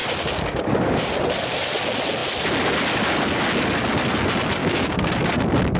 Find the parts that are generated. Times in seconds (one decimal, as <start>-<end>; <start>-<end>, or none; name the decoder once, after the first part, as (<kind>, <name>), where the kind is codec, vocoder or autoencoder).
0.0-1.1 (codec, DAC); 4.6-5.1